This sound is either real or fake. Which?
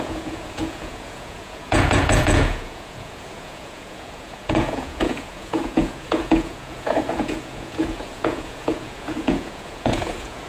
fake